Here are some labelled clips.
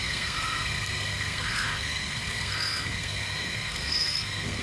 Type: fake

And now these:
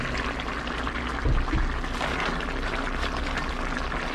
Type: real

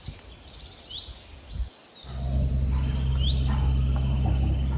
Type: real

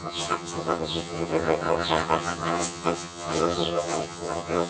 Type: fake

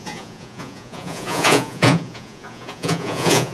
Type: fake